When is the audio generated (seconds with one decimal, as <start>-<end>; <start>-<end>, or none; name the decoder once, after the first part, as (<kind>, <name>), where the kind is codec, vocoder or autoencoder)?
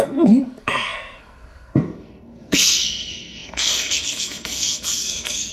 0.0-5.5 (codec, SNAC)